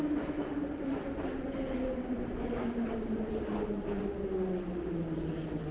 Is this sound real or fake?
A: real